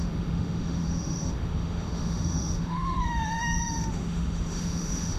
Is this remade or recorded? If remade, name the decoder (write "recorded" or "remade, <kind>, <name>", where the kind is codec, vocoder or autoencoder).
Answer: remade, autoencoder, DAC-VAE